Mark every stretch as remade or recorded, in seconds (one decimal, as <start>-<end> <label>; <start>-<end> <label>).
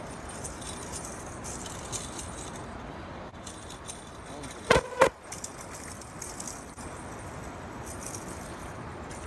0.0-9.3 recorded